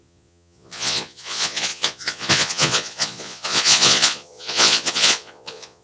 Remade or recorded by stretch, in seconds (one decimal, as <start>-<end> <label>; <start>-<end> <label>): 0.0-5.8 remade